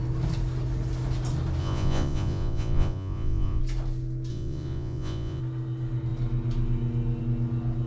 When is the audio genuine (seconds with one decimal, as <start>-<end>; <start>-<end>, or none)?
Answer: 0.0-1.6; 3.6-4.3; 5.4-7.9